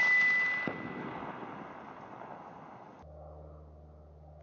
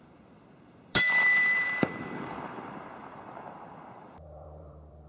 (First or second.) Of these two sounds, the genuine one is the first